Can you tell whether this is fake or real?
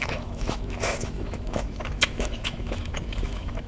fake